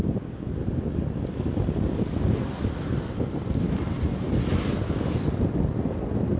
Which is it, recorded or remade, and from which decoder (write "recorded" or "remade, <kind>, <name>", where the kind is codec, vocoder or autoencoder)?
remade, vocoder, BigVGAN v2